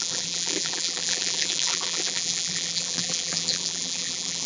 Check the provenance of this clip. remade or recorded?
remade